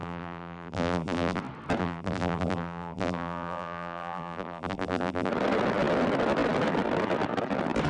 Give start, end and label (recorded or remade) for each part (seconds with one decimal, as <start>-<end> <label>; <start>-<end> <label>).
0.0-1.4 remade; 1.4-1.8 recorded; 1.8-5.3 remade; 5.3-7.9 recorded